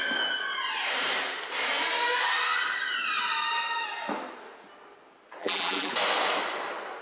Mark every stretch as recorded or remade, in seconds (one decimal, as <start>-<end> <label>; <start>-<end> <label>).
0.0-5.4 recorded; 5.4-5.9 remade; 5.9-7.0 recorded